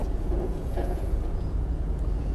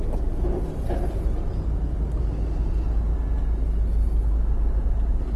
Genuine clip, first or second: second